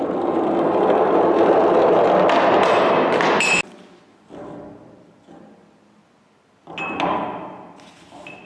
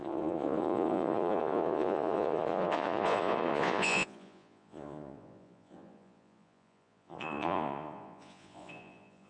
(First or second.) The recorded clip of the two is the first